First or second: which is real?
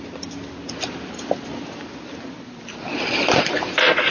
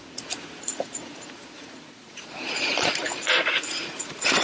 first